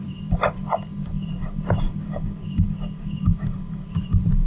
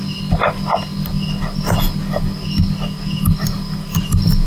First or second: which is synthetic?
first